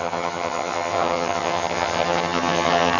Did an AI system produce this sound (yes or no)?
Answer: yes